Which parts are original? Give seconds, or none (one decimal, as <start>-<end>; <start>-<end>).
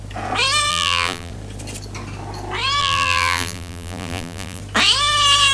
0.0-0.7; 1.3-2.8; 4.6-5.5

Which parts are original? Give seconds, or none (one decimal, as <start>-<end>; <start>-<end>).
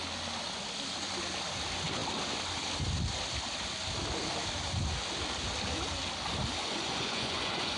0.0-6.6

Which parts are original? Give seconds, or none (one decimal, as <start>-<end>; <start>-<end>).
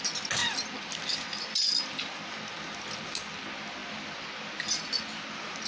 0.0-5.7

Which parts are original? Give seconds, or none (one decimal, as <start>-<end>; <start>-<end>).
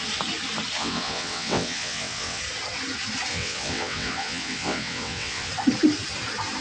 0.0-0.8; 2.4-3.3; 5.5-6.6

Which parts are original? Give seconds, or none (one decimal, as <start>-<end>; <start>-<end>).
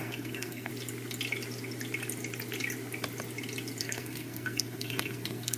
0.7-3.8